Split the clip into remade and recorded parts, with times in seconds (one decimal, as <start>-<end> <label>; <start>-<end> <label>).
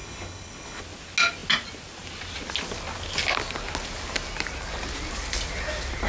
0.0-0.8 remade; 0.8-6.1 recorded